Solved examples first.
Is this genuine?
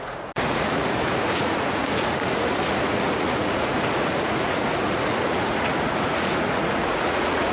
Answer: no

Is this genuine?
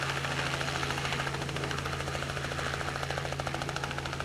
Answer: yes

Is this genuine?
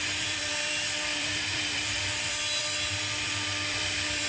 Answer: no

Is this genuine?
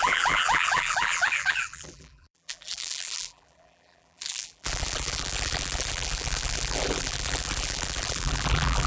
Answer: no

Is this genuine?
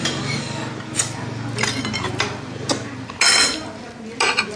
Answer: yes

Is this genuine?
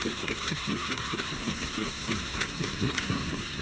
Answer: no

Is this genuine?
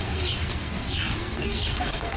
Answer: no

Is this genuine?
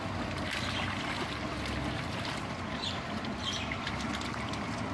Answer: yes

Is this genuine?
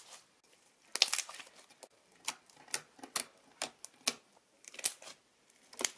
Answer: yes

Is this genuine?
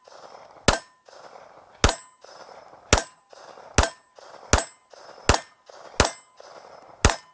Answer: yes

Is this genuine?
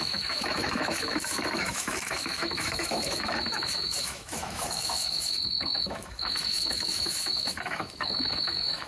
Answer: no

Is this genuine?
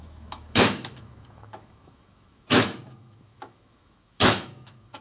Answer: no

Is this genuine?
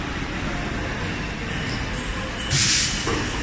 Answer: yes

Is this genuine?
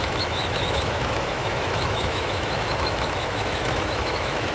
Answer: no